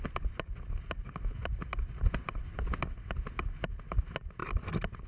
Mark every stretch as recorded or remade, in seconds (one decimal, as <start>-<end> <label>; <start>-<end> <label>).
0.0-1.4 recorded; 1.4-2.6 remade; 2.6-4.4 recorded; 4.4-5.1 remade